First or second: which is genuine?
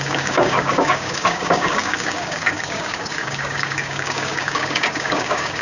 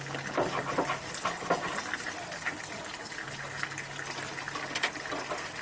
second